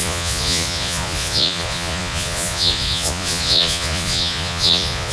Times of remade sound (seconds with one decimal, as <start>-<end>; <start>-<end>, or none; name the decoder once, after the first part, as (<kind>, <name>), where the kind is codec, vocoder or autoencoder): 0.0-5.1 (vocoder, Vocos)